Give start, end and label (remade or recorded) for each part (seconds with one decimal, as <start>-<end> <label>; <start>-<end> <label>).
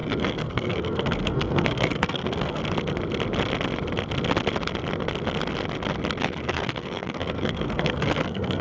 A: 0.0-2.6 remade; 2.6-6.2 recorded; 6.2-8.6 remade